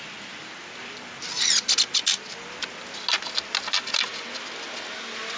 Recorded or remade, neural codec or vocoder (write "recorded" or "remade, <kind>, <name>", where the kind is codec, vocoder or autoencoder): recorded